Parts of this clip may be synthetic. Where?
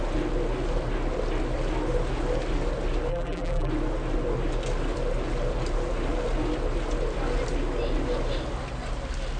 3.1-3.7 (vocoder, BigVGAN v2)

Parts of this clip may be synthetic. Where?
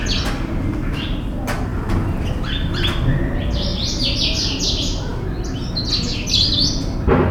3.7-4.6 (vocoder, BigVGAN v2)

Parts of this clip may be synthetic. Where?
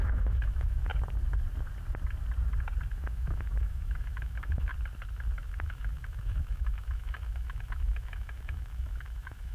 0.0-0.9 (autoencoder, DAC-VAE); 2.9-4.7; 5.4-9.5